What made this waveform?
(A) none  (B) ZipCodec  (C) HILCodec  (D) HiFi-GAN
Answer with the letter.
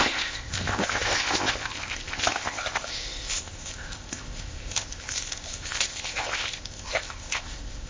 B